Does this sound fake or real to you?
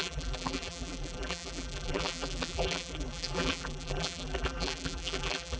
fake